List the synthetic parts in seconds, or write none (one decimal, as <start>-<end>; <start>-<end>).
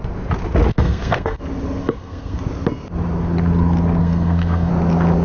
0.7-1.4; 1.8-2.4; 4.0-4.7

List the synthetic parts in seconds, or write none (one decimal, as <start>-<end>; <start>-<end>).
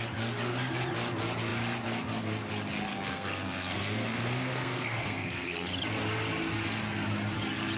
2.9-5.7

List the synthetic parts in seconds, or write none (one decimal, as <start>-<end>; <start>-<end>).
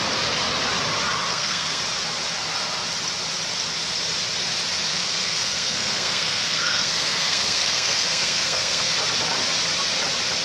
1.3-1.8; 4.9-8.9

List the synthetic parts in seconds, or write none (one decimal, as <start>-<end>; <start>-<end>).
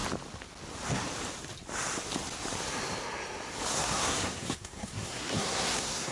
3.7-6.1